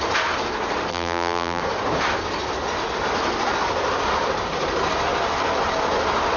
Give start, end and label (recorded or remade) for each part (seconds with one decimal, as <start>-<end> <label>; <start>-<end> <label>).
0.0-0.9 recorded; 0.9-1.6 remade; 1.6-6.4 recorded